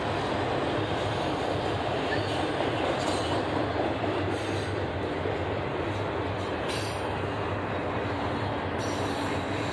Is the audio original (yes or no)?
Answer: yes